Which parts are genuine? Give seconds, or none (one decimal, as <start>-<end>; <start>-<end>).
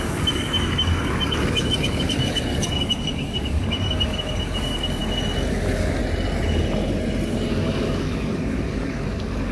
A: 5.0-5.5; 6.0-7.5